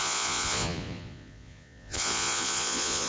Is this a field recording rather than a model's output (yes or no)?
no